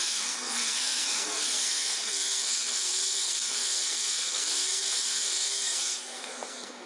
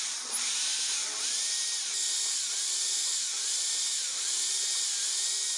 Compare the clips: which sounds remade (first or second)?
first